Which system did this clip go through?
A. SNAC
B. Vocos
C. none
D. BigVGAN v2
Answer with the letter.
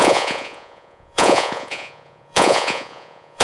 B